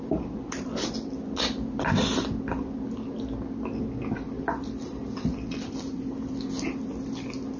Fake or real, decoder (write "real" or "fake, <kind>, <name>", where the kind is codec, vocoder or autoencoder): real